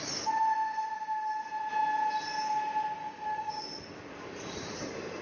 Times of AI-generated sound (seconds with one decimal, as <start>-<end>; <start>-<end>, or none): 3.0-3.6